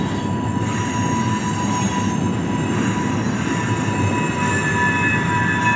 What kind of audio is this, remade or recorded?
recorded